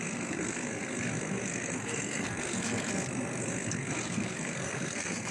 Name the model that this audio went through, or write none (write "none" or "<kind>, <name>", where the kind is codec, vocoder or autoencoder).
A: codec, SNAC